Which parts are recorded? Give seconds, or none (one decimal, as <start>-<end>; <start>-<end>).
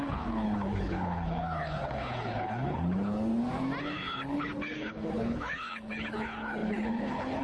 3.3-3.8